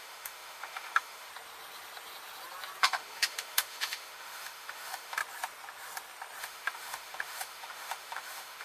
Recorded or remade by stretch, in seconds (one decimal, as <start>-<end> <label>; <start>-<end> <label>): 0.0-1.3 remade; 1.3-2.8 recorded; 2.8-5.2 remade; 5.2-6.4 recorded; 6.4-8.6 remade